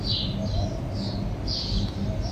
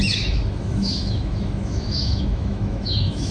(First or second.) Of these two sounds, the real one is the first